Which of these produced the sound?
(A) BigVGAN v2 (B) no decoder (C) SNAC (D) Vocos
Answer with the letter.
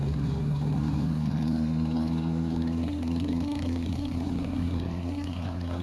C